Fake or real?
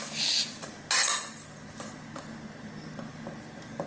real